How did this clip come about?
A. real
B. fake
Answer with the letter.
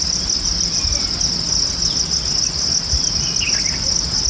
A